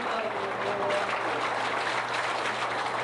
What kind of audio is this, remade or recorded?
recorded